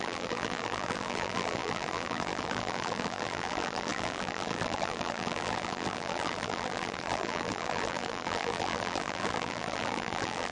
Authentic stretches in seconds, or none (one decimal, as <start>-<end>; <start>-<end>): none